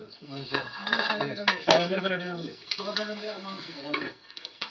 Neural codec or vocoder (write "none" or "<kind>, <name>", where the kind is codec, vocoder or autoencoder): codec, SNAC